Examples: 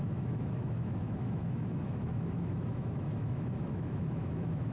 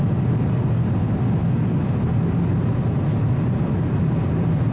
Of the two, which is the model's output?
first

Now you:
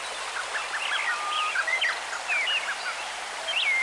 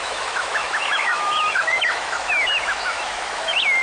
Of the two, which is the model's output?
second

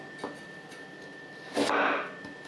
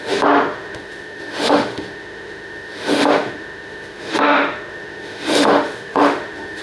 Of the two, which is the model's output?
second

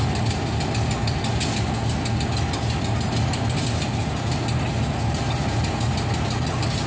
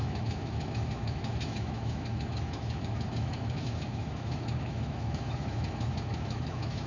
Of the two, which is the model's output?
second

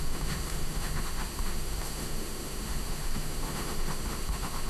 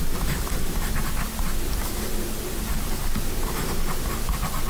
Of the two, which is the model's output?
first